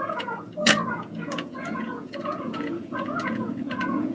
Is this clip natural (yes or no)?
no